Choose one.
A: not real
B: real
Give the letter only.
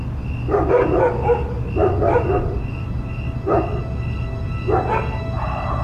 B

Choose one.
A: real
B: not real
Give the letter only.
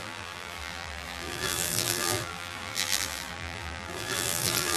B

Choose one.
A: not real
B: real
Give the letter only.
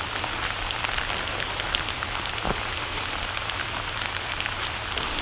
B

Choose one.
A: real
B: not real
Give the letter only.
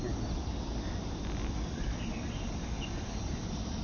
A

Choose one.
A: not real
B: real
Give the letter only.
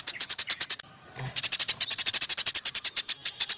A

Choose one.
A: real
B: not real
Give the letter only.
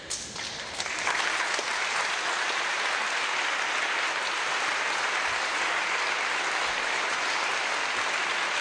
A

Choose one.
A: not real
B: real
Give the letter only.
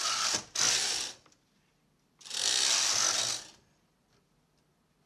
B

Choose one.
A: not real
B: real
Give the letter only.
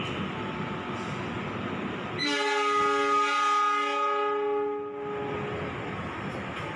B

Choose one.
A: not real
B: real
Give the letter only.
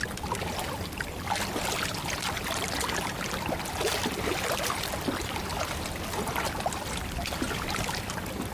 B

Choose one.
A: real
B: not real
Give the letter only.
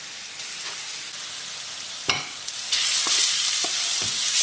A